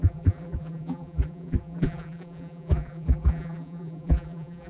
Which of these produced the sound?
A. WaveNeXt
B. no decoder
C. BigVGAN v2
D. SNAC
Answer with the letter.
C